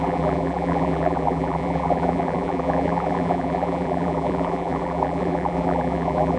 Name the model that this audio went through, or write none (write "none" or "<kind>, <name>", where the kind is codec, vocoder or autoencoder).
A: vocoder, BigVGAN v2